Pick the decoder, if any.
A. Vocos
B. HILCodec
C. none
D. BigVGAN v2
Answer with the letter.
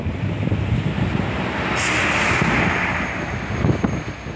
C